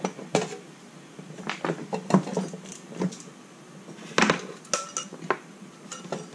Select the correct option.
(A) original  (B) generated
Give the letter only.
A